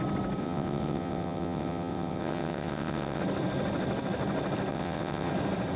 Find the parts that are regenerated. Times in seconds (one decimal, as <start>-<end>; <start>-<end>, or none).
0.4-3.2; 4.7-5.3